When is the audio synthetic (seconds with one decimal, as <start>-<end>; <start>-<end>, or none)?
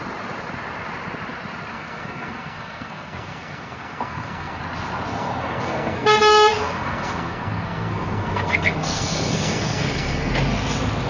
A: 1.7-4.6; 5.1-10.3